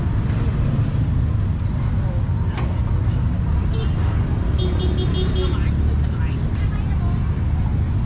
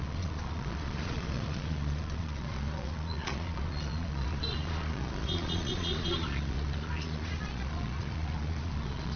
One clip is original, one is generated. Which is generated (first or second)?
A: second